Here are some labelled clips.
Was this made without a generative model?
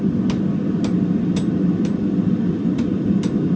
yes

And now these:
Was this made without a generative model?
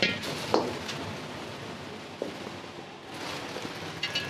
yes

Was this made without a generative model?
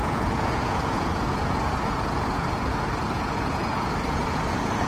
no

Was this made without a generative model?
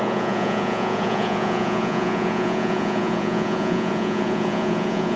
no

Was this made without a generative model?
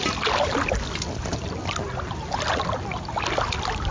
yes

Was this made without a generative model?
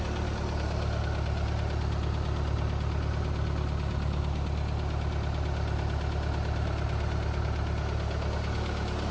yes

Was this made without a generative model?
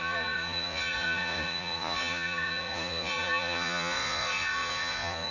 no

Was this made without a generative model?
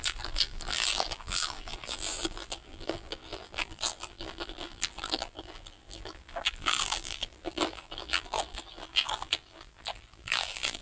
no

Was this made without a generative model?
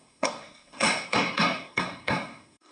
no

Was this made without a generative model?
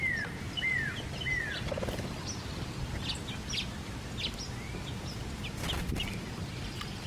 yes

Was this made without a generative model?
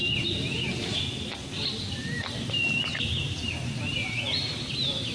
yes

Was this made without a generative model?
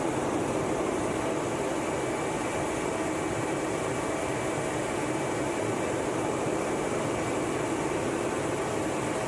yes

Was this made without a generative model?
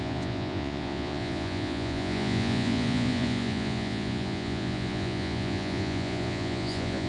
no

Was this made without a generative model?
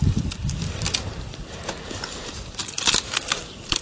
yes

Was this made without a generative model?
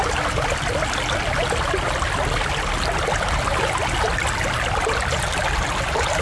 yes